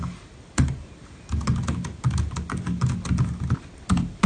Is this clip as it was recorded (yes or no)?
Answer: yes